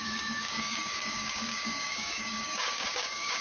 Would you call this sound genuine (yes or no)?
no